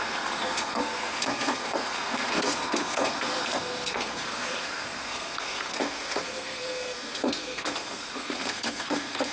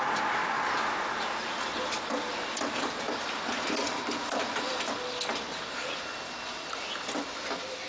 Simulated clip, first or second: first